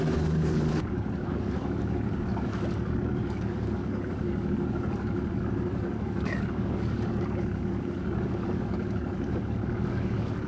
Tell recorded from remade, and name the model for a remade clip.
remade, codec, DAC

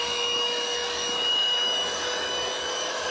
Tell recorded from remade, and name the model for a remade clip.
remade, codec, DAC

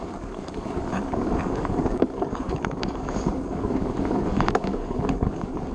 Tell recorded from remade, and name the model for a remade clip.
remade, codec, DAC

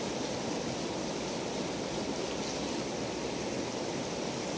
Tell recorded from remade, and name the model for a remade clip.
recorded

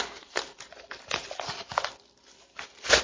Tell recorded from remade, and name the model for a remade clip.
recorded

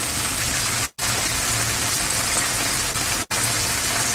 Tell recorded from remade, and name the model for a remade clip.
recorded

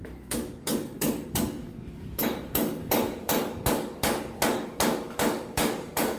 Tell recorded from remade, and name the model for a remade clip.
remade, codec, DAC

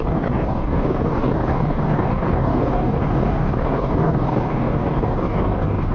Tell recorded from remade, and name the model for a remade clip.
remade, codec, DAC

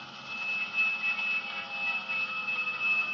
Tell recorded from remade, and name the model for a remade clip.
recorded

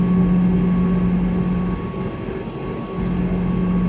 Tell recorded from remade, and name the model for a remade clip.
recorded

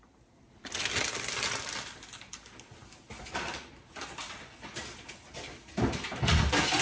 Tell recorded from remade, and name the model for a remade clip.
recorded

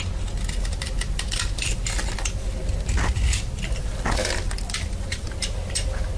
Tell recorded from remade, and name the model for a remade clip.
recorded